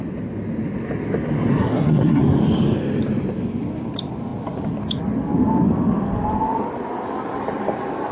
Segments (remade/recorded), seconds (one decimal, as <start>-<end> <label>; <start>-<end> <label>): 0.0-1.5 recorded; 1.5-2.2 remade; 2.2-8.1 recorded

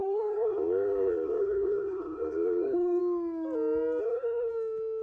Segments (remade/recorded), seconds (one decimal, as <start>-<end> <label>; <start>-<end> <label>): 0.0-3.0 remade; 3.0-4.0 recorded; 4.0-4.5 remade; 4.5-5.0 recorded

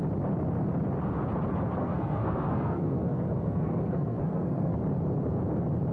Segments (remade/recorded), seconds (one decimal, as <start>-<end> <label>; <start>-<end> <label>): 0.0-1.8 recorded; 1.8-4.8 remade; 4.8-5.9 recorded

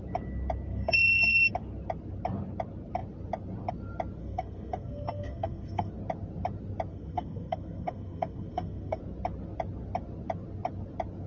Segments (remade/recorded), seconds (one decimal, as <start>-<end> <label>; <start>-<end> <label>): 0.0-0.7 recorded; 0.7-1.5 remade; 1.5-4.2 recorded; 4.2-5.9 remade; 5.9-6.9 recorded; 6.9-9.0 remade; 9.0-11.3 recorded

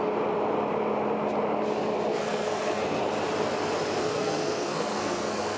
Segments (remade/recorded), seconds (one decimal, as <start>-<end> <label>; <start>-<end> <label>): 0.0-2.1 recorded; 2.1-3.0 remade; 3.0-4.0 recorded; 4.0-5.6 remade

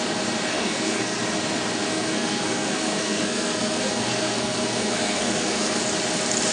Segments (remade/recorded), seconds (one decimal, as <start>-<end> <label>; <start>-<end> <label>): 0.0-0.5 recorded; 0.5-1.2 remade; 1.2-1.9 recorded; 1.9-5.8 remade; 5.8-6.5 recorded

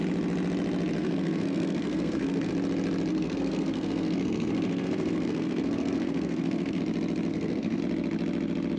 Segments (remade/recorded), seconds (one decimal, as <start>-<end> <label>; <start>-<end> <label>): 0.0-1.0 recorded; 1.0-2.5 remade; 2.5-3.1 recorded; 3.1-6.8 remade; 6.8-7.3 recorded; 7.3-7.8 remade; 7.8-8.8 recorded

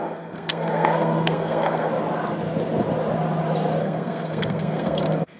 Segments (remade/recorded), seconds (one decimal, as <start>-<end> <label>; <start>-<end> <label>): 0.0-1.9 remade; 1.9-3.8 recorded; 3.8-5.4 remade